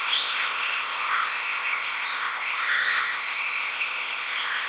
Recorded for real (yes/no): no